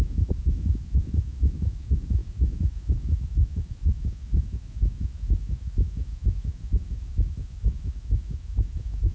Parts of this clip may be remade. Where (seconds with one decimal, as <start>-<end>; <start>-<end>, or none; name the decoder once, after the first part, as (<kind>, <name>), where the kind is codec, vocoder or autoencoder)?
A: 0.0-9.1 (autoencoder, DAC-VAE)